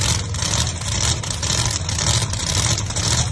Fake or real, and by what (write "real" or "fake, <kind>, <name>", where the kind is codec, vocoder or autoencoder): real